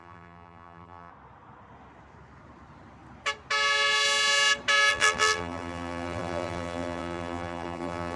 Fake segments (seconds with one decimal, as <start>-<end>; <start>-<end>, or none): 0.0-1.1; 4.9-8.2